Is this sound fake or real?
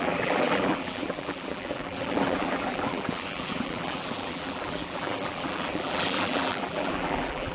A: fake